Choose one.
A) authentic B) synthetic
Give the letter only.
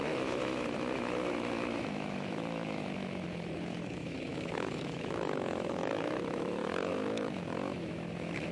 B